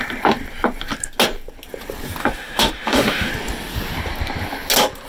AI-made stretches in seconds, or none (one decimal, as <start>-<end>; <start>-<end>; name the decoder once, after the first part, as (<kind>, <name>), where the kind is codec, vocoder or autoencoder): 2.2-3.3 (autoencoder, DAC-VAE)

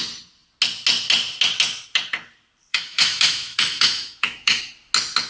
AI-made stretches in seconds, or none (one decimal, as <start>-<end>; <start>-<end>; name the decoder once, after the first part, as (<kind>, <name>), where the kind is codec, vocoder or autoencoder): 2.7-4.6 (autoencoder, DAC-VAE)